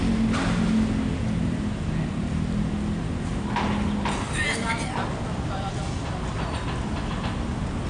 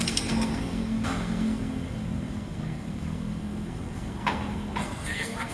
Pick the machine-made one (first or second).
second